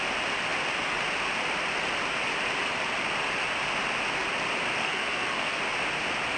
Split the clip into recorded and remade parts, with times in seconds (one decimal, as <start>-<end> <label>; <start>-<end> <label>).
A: 0.0-4.8 recorded; 4.8-5.6 remade; 5.6-6.4 recorded